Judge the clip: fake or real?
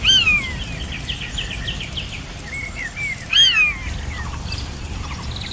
real